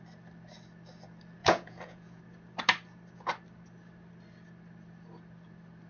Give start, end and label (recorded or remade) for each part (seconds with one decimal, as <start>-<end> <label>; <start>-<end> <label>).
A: 0.0-1.4 recorded; 1.4-2.2 remade; 2.2-5.9 recorded